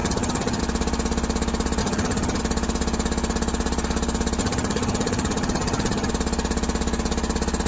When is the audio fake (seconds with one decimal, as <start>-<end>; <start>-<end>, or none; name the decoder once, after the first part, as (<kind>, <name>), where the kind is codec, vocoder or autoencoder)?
0.0-0.6 (vocoder, HiFi-GAN); 1.8-2.4; 4.4-6.1